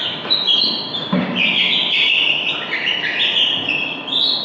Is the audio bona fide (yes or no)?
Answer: no